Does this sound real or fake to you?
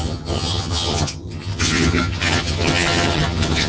fake